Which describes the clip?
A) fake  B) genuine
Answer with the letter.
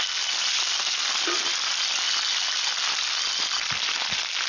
B